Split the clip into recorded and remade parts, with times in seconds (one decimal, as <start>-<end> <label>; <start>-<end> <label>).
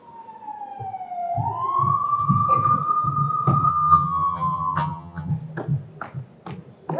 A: 0.0-3.7 recorded; 3.7-5.3 remade; 5.3-7.0 recorded